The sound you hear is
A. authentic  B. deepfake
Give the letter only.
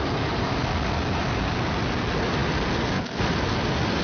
A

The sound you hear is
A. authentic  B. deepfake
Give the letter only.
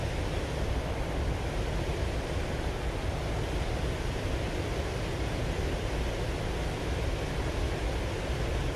A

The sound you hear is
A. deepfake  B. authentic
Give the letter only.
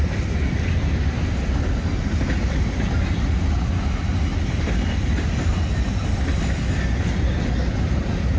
B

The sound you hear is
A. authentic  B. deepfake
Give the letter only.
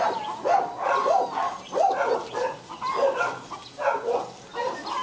A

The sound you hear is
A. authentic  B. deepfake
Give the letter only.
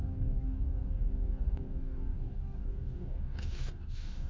B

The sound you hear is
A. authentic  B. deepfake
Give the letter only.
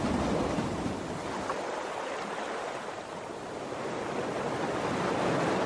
A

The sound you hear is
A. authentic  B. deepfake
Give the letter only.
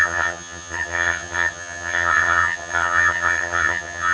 B